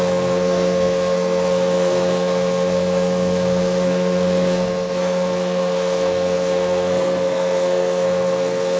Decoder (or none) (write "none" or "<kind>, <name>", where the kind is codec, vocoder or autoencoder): codec, SNAC